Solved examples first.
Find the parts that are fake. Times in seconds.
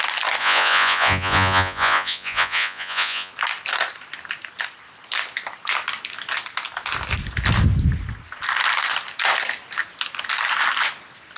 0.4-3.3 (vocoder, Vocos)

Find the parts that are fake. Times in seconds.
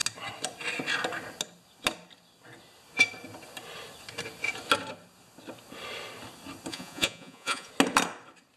6.7-7.7 (vocoder, Vocos)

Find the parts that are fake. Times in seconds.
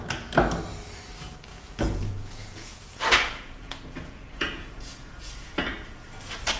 1.5-5.5 (vocoder, Vocos)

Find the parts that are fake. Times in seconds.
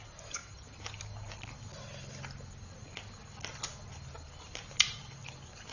none